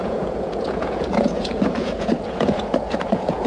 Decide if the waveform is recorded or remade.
remade